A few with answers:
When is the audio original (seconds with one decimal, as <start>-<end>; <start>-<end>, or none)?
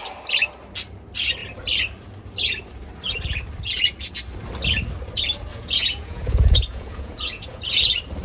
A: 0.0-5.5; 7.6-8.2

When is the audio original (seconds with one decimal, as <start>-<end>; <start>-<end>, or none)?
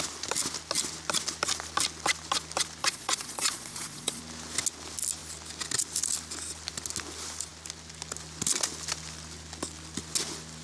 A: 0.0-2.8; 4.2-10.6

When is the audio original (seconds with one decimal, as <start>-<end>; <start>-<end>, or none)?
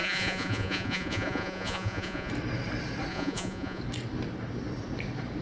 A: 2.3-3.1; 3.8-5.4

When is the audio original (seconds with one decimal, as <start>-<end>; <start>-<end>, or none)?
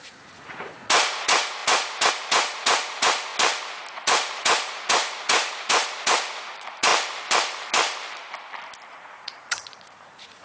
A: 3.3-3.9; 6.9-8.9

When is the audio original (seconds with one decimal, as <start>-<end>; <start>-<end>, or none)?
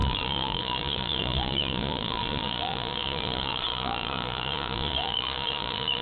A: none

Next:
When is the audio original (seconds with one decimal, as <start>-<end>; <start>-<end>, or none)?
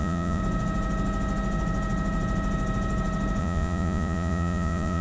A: 0.4-3.4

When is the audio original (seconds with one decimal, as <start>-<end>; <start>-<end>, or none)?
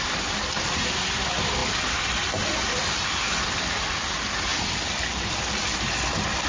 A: 0.0-6.5